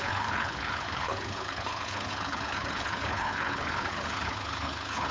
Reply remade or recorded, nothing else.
remade